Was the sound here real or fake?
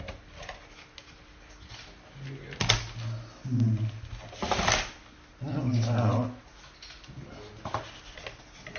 real